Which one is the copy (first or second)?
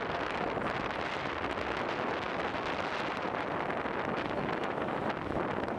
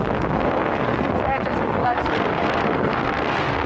second